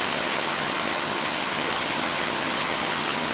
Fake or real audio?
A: fake